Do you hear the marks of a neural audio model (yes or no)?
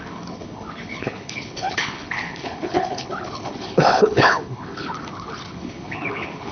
yes